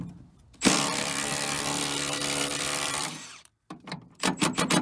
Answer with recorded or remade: remade